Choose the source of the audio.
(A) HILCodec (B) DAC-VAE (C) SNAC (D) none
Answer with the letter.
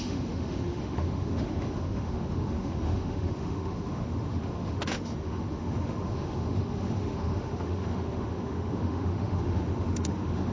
B